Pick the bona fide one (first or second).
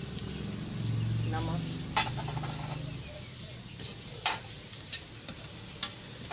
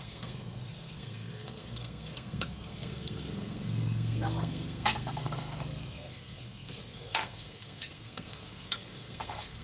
first